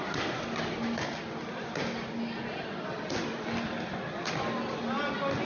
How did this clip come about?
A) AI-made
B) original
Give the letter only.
B